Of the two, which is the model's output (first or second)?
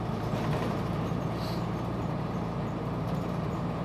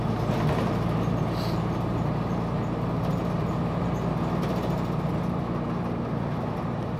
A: first